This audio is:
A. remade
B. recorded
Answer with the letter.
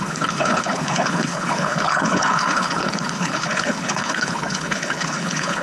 A